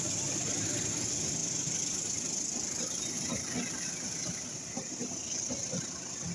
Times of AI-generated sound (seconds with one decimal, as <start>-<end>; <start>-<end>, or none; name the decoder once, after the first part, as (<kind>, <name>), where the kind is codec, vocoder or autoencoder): 5.0-5.5 (vocoder, BigVGAN v2)